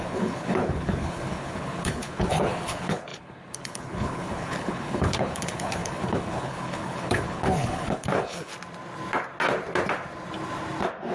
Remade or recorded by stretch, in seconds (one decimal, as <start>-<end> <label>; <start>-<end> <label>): 0.0-8.5 remade; 8.5-11.1 recorded